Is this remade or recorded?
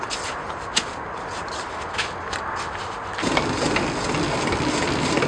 recorded